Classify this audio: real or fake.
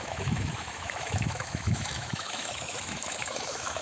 fake